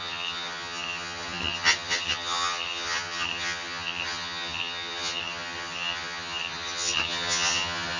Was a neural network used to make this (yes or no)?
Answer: yes